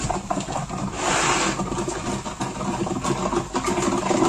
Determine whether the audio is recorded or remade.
recorded